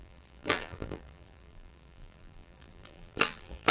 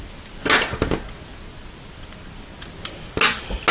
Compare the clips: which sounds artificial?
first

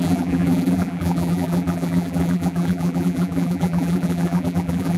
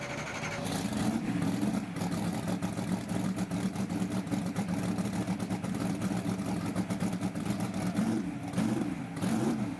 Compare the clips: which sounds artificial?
first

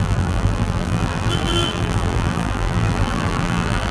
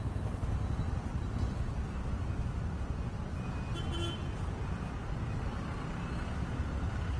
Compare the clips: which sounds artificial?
first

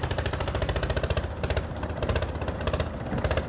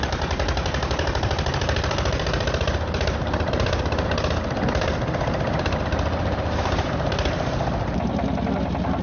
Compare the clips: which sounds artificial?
second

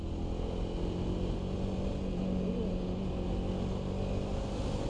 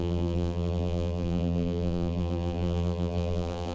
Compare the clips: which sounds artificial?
second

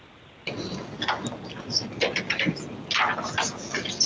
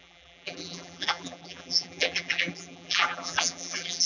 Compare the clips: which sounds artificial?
second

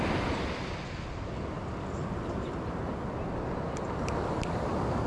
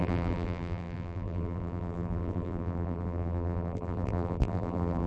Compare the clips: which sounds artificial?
second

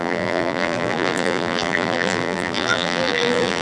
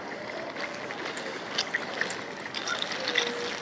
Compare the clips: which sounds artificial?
first